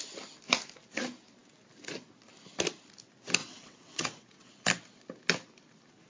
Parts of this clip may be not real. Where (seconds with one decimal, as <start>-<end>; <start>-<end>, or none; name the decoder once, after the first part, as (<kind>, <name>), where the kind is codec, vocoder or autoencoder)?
3.4-4.5 (vocoder, WaveNeXt)